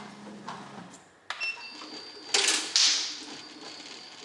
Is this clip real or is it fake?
real